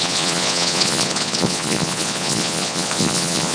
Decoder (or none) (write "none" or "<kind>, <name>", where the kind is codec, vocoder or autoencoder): vocoder, Vocos